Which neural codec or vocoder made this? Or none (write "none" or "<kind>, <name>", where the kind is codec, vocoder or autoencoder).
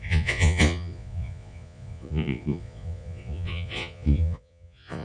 vocoder, Vocos